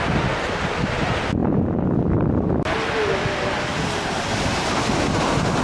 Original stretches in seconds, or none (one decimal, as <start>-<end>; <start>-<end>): 0.0-5.6